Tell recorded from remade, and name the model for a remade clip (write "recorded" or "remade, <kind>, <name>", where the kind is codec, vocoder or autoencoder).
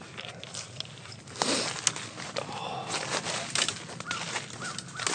recorded